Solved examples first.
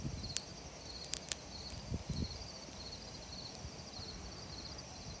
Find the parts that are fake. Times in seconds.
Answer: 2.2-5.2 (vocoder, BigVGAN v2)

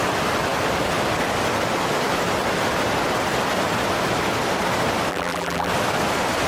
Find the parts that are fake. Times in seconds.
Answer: 5.1-5.7 (vocoder, BigVGAN v2)

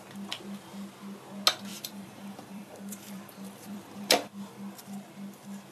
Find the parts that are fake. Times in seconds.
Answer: 1.7-4.5 (vocoder, BigVGAN v2)

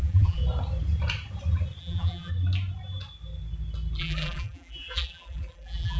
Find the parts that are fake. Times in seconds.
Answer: 0.0-0.4 (vocoder, BigVGAN v2); 1.8-2.3; 4.0-6.0

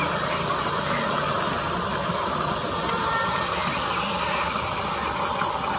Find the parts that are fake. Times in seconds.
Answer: 1.9-3.8 (vocoder, BigVGAN v2)

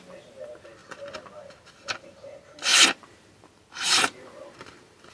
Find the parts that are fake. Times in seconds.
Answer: 2.7-5.1 (vocoder, BigVGAN v2)

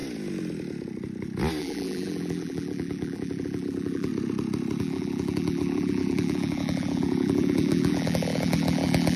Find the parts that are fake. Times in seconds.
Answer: 1.6-4.1 (vocoder, BigVGAN v2); 4.8-9.2

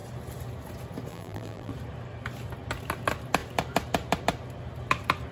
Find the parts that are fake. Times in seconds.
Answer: 1.1-1.7 (vocoder, BigVGAN v2)